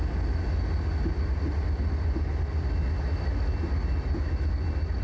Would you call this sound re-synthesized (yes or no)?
no